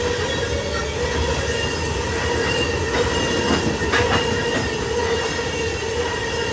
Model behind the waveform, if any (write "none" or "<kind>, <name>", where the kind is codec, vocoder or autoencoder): none